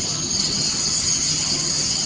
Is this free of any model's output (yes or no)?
no